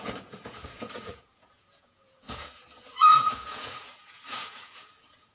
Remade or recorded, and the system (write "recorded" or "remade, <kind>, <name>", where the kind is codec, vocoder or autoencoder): remade, vocoder, Vocos